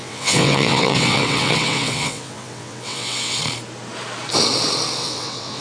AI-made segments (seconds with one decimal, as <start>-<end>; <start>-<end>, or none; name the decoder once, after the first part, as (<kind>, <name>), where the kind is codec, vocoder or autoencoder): 0.0-3.4 (vocoder, WaveNeXt); 5.0-5.6